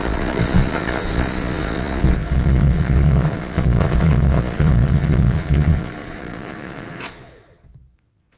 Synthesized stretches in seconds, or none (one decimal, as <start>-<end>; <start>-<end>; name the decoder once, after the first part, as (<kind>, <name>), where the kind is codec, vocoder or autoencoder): 0.0-8.4 (vocoder, Vocos)